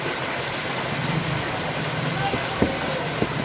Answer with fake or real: real